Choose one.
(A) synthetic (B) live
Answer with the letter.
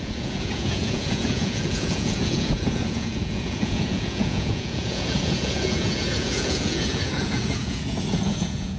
A